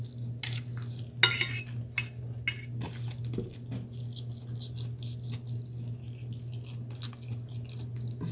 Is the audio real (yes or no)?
yes